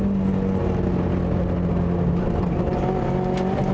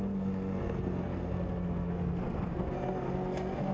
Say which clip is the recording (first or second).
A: first